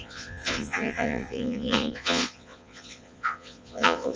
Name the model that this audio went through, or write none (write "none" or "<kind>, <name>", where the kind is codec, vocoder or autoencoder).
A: vocoder, Vocos